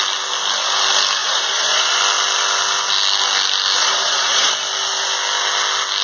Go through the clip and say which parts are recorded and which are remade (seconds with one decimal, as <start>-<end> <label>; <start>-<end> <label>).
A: 0.0-1.2 recorded; 1.2-2.0 remade; 2.0-3.8 recorded; 3.8-4.5 remade; 4.5-6.0 recorded

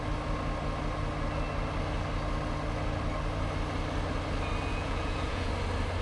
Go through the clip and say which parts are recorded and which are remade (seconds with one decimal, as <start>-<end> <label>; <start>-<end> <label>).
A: 0.0-4.7 recorded; 4.7-5.5 remade; 5.5-6.0 recorded

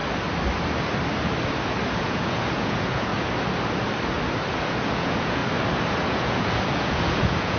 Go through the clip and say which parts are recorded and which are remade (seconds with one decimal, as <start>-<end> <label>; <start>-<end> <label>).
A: 0.0-1.9 recorded; 1.9-3.1 remade; 3.1-4.5 recorded; 4.5-5.4 remade; 5.4-5.9 recorded; 5.9-7.6 remade

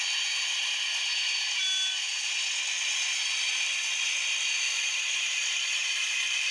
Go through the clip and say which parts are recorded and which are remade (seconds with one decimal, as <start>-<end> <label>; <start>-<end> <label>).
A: 0.0-4.6 recorded; 4.6-6.5 remade

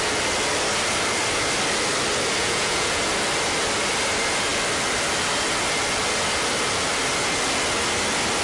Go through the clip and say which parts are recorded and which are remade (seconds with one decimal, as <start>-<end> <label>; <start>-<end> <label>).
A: 0.0-2.4 recorded; 2.4-3.0 remade; 3.0-8.4 recorded